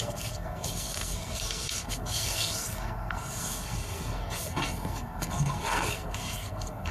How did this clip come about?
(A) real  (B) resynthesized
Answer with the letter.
B